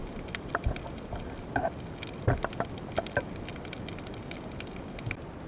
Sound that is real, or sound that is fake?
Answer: real